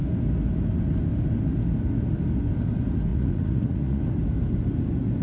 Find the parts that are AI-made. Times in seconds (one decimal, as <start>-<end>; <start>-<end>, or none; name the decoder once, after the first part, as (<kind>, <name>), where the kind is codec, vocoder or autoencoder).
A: 3.1-4.0 (vocoder, Vocos)